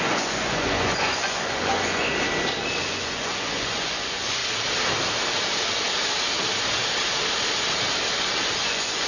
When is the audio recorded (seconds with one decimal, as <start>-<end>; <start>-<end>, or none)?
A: 2.1-2.8; 4.4-8.6